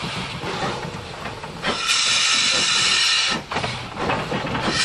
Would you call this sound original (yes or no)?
no